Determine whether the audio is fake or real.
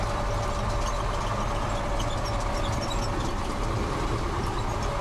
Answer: real